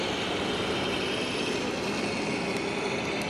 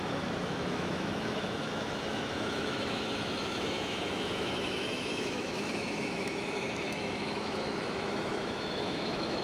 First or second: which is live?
first